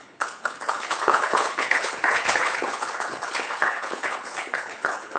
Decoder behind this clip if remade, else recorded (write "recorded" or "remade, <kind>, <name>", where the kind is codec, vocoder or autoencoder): remade, codec, HILCodec